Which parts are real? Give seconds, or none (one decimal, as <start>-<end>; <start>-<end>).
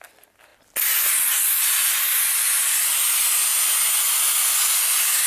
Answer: 0.0-5.3